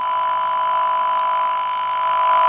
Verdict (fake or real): real